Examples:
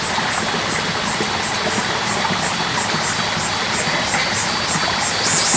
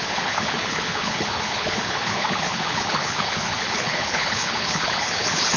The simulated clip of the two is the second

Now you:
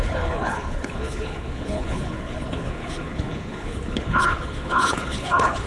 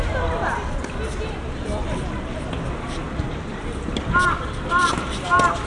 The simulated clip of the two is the first